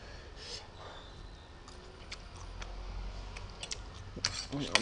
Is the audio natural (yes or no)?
yes